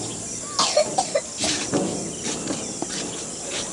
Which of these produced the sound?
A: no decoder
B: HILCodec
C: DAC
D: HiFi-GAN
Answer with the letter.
A